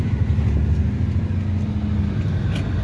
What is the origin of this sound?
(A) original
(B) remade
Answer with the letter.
A